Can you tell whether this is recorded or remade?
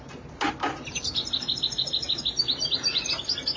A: recorded